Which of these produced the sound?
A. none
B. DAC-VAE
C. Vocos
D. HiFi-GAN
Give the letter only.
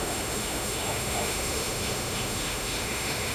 B